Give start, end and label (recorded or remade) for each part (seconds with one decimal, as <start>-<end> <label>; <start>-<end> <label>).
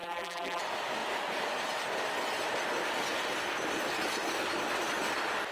0.0-0.6 remade; 0.6-5.5 recorded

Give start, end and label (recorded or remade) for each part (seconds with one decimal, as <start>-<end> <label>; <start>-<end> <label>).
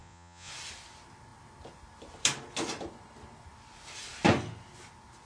0.0-0.5 remade; 0.5-5.3 recorded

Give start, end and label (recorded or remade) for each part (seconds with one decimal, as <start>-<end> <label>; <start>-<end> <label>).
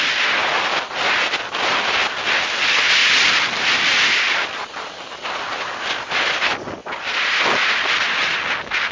0.0-3.0 recorded; 3.0-6.1 remade; 6.1-8.9 recorded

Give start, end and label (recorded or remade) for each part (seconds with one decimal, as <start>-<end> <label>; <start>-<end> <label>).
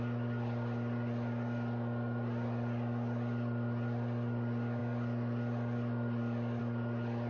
0.0-7.3 recorded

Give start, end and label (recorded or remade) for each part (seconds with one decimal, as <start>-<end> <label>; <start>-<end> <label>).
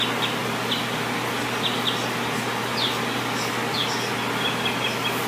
0.0-5.3 recorded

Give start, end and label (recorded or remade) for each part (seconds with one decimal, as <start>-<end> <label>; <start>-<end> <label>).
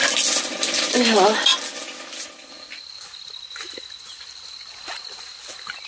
0.0-5.9 recorded